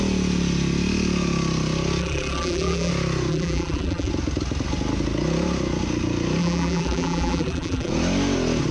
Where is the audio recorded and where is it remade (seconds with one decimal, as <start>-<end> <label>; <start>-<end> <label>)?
0.0-2.0 recorded; 2.0-2.9 remade; 2.9-3.3 recorded; 3.3-4.1 remade; 4.1-6.4 recorded; 6.4-7.9 remade; 7.9-8.7 recorded